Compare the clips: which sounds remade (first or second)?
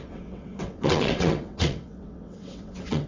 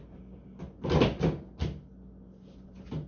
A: first